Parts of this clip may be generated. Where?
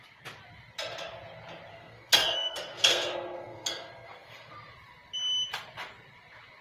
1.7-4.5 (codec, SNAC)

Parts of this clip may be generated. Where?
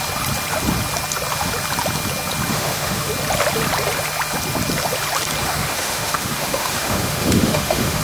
2.5-3.1 (autoencoder, DAC-VAE); 5.4-8.0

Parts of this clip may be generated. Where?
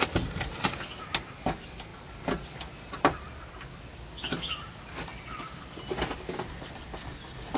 none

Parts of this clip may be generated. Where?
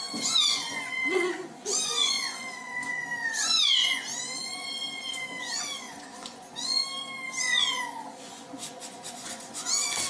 0.0-6.8 (vocoder, Vocos); 7.4-10.1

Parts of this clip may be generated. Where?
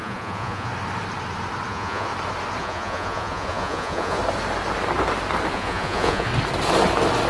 0.0-0.7 (vocoder, Vocos); 1.7-2.1; 2.6-4.2; 5.5-6.3